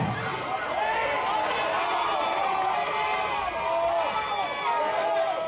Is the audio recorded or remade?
recorded